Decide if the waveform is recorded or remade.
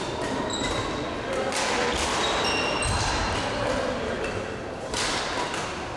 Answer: recorded